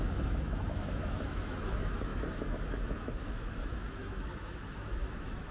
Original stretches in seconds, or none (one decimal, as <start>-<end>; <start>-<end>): none